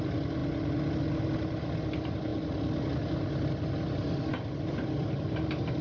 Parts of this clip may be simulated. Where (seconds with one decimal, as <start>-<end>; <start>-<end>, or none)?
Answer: none